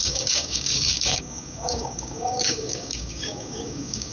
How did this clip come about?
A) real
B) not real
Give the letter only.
B